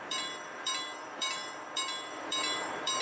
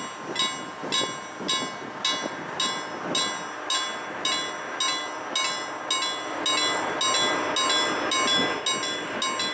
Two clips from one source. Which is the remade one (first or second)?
first